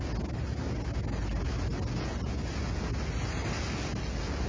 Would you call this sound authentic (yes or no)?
yes